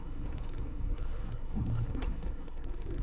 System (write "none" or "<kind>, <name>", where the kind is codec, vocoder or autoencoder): codec, SNAC